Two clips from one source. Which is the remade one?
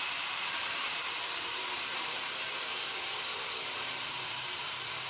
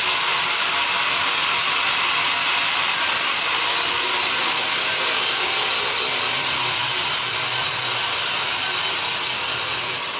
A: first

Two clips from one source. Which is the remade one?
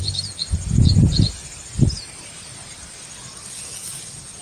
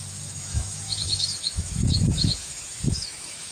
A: second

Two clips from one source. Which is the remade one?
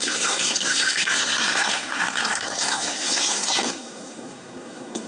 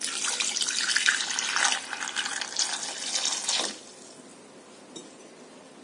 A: first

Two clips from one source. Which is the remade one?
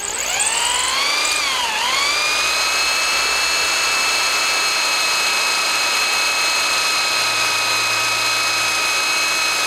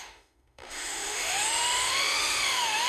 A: second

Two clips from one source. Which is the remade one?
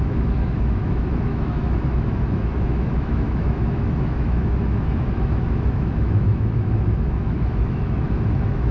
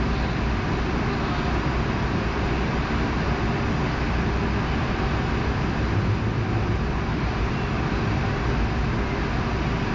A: first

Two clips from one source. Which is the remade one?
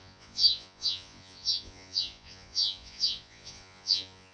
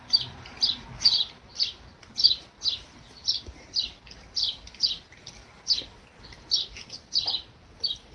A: first